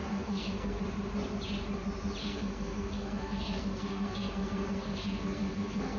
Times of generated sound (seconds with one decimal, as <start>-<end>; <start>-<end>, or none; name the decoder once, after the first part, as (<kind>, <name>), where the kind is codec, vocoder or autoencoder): 0.0-0.8 (codec, SNAC); 2.2-6.0